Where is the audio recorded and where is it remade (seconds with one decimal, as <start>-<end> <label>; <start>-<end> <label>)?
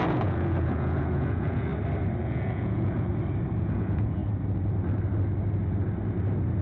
0.0-1.7 remade; 1.7-2.2 recorded; 2.2-3.1 remade; 3.1-3.6 recorded; 3.6-4.2 remade; 4.2-6.6 recorded